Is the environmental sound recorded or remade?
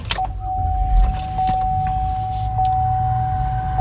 recorded